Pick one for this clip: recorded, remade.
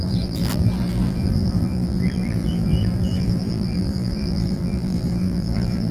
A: remade